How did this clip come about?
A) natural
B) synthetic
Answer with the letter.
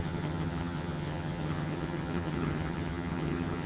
B